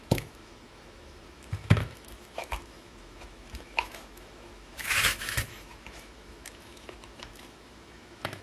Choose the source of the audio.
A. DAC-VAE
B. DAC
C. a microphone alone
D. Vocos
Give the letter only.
A